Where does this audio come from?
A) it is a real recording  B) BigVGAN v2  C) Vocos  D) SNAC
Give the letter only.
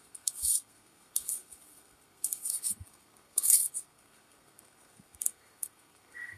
D